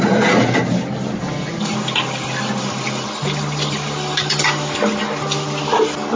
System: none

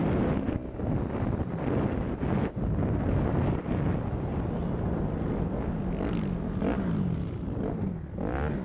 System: none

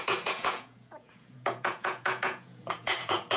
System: vocoder, Vocos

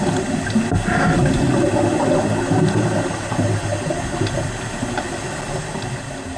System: none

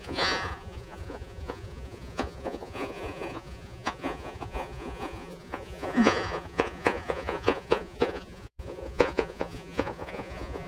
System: vocoder, Vocos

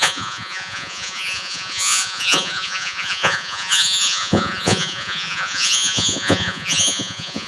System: vocoder, Vocos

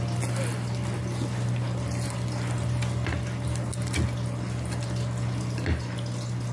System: none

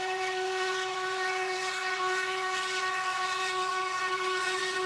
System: vocoder, Vocos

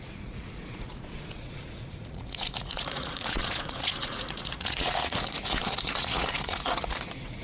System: vocoder, Vocos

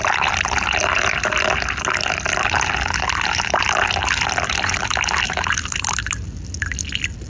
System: none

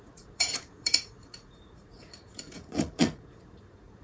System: vocoder, Vocos